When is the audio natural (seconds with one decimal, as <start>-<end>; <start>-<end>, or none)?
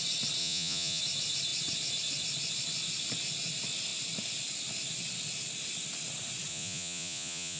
0.0-0.4; 1.0-6.5